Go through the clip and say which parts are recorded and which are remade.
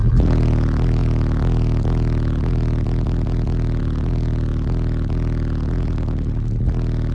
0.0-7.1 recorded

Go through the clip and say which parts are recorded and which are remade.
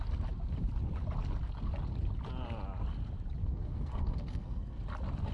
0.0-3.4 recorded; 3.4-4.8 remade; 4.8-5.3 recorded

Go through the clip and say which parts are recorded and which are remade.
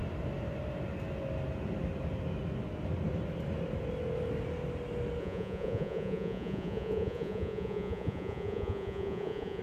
0.0-5.2 recorded; 5.2-9.6 remade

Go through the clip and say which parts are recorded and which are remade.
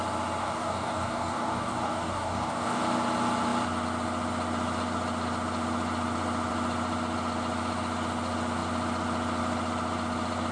0.0-0.4 recorded; 0.4-2.8 remade; 2.8-10.5 recorded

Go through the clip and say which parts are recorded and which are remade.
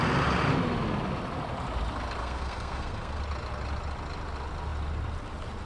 0.0-2.2 recorded; 2.2-3.2 remade; 3.2-5.7 recorded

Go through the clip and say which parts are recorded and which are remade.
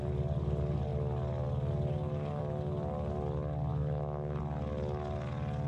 0.0-3.7 recorded; 3.7-4.4 remade; 4.4-5.7 recorded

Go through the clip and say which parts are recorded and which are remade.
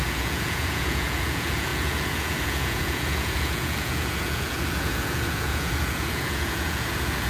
0.0-7.3 remade